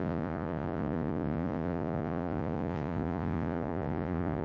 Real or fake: fake